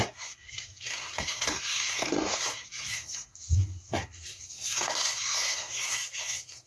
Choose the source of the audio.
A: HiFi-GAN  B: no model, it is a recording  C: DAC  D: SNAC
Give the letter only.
D